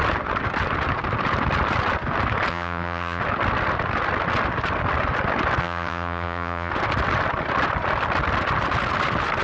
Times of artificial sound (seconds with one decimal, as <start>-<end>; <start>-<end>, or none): 2.5-3.2; 5.6-6.7